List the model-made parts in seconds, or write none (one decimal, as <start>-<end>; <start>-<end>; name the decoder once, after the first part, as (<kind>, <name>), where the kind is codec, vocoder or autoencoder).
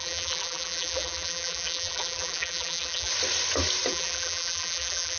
0.0-3.1 (vocoder, BigVGAN v2); 3.9-5.2